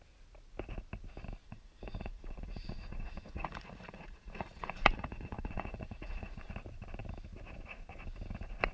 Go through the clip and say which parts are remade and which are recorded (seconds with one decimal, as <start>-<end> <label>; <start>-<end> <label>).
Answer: 0.0-1.4 recorded; 1.4-6.5 remade; 6.5-8.7 recorded